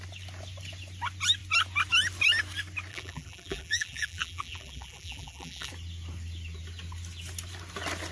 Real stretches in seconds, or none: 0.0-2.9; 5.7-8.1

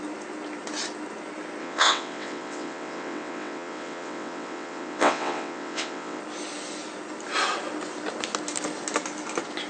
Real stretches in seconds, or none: 0.0-1.6; 6.2-9.7

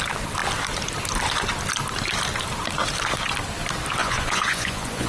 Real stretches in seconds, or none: 0.0-4.0